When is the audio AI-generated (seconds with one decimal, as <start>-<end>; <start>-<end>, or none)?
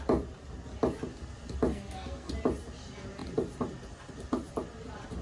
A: 1.7-2.3